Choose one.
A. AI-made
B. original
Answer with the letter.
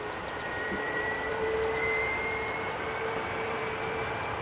A